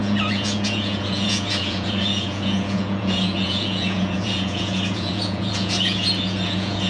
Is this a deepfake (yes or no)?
yes